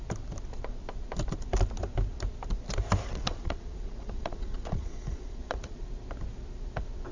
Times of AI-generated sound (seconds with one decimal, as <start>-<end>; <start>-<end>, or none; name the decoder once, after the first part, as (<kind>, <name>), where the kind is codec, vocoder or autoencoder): 3.1-5.8 (vocoder, Vocos)